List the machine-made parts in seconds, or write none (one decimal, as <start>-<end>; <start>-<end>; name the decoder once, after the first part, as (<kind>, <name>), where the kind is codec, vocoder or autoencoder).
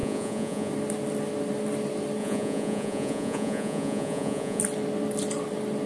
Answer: 0.0-0.7 (vocoder, Vocos); 2.2-4.6